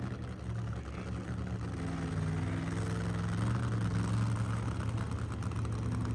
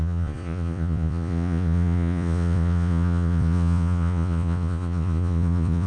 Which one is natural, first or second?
first